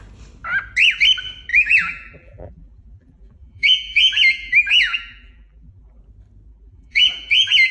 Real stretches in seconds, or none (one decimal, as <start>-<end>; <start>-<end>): 0.0-1.5; 6.0-6.5

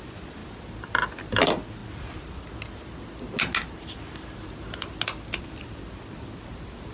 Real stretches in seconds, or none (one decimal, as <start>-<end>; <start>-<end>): 0.4-1.3; 1.8-5.4